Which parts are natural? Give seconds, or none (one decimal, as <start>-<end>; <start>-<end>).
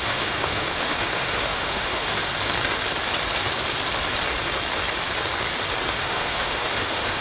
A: 2.3-5.9